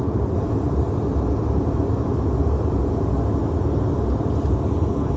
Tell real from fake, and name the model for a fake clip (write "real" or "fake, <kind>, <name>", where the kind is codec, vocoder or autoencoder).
real